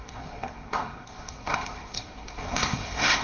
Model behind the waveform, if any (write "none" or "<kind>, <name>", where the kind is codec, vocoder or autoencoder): codec, SNAC